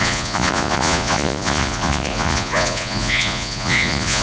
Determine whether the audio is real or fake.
fake